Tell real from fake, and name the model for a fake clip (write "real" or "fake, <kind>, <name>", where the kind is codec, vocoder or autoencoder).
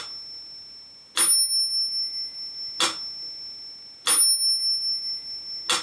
real